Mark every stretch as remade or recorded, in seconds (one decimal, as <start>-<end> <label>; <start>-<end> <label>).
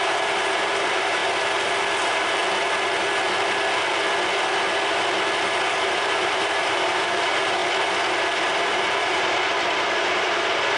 0.0-1.2 remade; 1.2-2.0 recorded; 2.0-2.4 remade; 2.4-5.7 recorded; 5.7-7.6 remade; 7.6-8.7 recorded; 8.7-10.8 remade